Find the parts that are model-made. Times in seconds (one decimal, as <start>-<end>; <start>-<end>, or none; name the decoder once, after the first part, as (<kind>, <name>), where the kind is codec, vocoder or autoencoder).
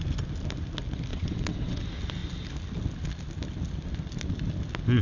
1.1-1.8 (vocoder, WaveNeXt)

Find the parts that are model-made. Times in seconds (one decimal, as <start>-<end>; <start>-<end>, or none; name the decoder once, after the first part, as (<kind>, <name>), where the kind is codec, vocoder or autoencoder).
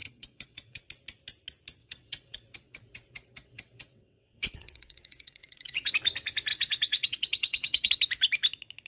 0.0-0.9 (vocoder, WaveNeXt); 1.8-5.9; 6.5-7.9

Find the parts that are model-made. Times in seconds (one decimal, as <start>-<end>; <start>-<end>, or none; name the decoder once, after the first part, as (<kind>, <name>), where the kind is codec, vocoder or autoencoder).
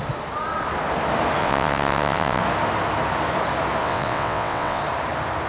1.4-2.4 (vocoder, WaveNeXt); 3.8-4.8